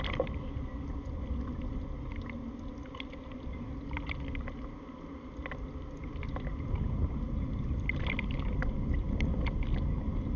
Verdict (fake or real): real